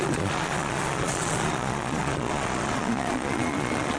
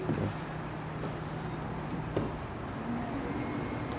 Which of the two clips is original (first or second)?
second